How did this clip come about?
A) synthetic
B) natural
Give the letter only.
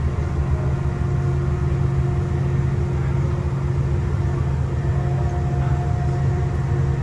B